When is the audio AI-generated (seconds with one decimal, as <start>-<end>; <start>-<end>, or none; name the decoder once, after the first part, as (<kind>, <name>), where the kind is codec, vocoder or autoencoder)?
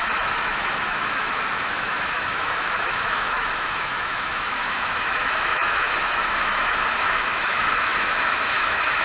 0.0-9.0 (autoencoder, DAC-VAE)